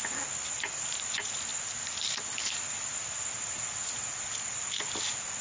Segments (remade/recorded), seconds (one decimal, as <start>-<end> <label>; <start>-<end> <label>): 0.0-5.4 recorded